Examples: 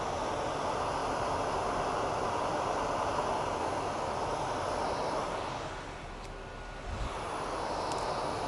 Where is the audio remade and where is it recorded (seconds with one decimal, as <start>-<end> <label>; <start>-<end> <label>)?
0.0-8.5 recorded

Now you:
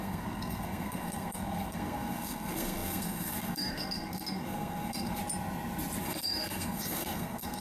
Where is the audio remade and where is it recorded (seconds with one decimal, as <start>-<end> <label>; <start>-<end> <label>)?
0.0-5.2 remade; 5.2-6.0 recorded; 6.0-7.6 remade

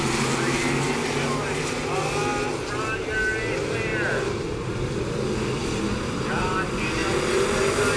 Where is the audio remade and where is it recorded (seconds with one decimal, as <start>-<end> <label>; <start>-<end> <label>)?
0.0-8.0 recorded